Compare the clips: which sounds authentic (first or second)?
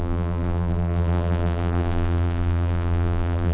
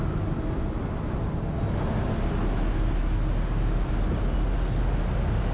second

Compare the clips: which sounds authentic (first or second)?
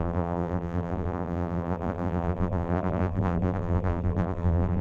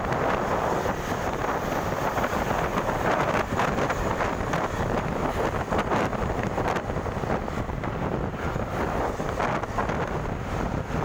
second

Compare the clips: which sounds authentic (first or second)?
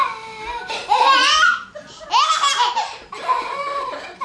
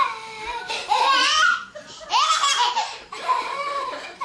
first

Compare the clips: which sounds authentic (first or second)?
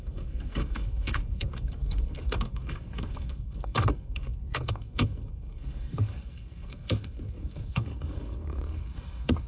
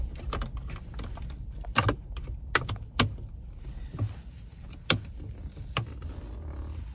second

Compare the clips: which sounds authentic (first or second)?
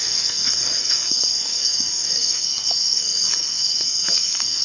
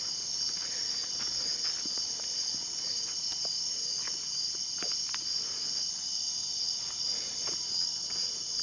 second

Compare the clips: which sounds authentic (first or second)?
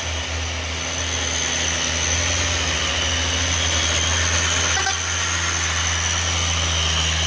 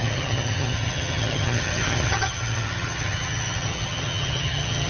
first